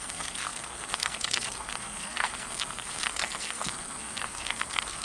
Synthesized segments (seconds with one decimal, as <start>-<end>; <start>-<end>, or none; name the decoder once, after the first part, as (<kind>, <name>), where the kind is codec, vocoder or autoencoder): 0.0-5.0 (codec, SNAC)